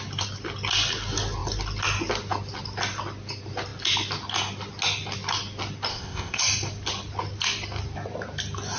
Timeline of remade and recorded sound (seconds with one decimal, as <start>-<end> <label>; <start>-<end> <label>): 0.0-5.9 recorded; 5.9-6.4 remade; 6.4-8.8 recorded